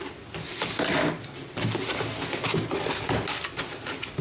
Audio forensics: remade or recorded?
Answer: recorded